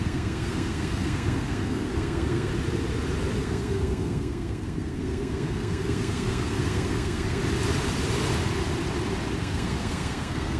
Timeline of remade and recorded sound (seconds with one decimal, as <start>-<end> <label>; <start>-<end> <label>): 0.0-2.5 remade; 2.5-3.4 recorded; 3.4-7.4 remade; 7.4-9.4 recorded; 9.4-10.6 remade